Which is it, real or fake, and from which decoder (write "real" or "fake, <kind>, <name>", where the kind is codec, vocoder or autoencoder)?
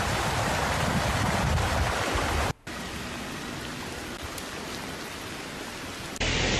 real